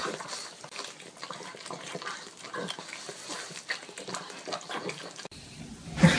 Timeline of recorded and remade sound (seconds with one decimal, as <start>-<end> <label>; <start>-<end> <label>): 0.0-6.2 recorded